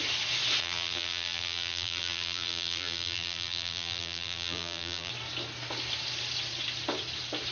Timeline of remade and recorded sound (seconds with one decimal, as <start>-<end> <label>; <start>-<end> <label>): 0.0-0.6 recorded; 0.6-5.1 remade; 5.1-7.5 recorded